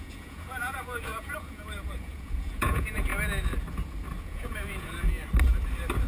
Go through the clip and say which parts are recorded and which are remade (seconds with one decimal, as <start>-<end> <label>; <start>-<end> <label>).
0.0-3.1 remade; 3.1-4.2 recorded; 4.2-5.1 remade; 5.1-6.1 recorded

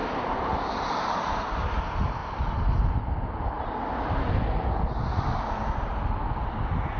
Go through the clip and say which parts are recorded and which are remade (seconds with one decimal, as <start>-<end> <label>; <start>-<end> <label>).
0.0-1.8 remade; 1.8-7.0 recorded

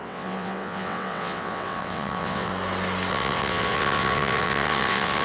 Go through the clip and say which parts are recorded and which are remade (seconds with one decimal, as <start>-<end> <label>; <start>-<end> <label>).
0.0-2.5 remade; 2.5-3.1 recorded; 3.1-5.2 remade

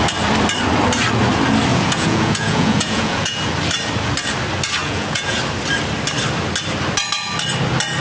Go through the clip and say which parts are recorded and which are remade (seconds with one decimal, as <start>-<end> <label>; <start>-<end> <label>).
0.0-1.7 recorded; 1.7-3.5 remade; 3.5-4.8 recorded; 4.8-5.4 remade; 5.4-8.0 recorded